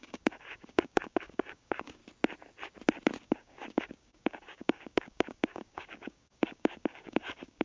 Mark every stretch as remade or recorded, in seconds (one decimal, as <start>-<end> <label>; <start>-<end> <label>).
0.0-2.0 remade; 2.0-3.2 recorded; 3.2-7.6 remade